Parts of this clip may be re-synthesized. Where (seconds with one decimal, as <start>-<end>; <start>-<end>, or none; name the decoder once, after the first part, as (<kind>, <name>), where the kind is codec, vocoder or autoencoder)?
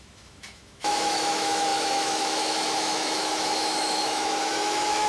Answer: 0.0-5.1 (autoencoder, DAC-VAE)